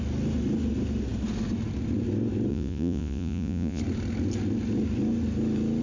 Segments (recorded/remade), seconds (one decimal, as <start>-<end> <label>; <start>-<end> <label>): 0.0-2.5 recorded; 2.5-3.8 remade; 3.8-5.8 recorded